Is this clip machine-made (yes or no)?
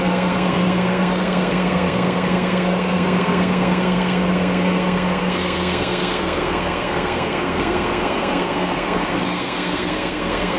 yes